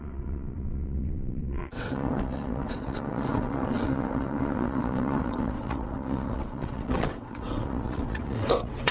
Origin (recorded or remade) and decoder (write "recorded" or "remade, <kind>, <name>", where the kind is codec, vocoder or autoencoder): remade, vocoder, WaveNeXt